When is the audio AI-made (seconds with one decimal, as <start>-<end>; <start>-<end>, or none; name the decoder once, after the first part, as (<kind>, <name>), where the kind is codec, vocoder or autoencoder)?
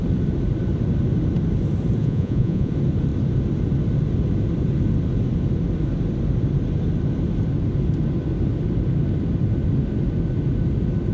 2.0-2.7 (vocoder, Vocos)